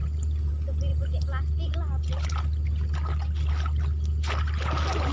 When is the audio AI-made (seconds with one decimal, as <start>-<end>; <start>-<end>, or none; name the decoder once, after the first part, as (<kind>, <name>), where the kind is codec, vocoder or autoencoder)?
none